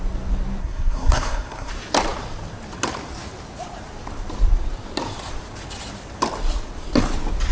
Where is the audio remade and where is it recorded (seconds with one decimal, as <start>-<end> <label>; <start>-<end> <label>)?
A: 0.0-0.6 recorded; 0.6-1.7 remade; 1.7-7.5 recorded